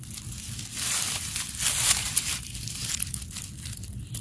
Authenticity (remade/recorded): recorded